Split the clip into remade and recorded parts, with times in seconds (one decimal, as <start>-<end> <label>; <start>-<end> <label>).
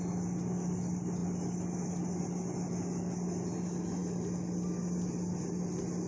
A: 0.0-6.1 recorded